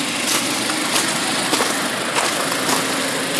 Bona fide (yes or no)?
yes